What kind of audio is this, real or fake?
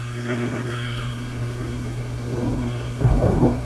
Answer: fake